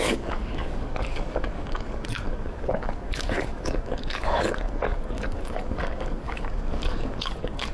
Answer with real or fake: fake